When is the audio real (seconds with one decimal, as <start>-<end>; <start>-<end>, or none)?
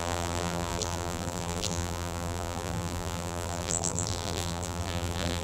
none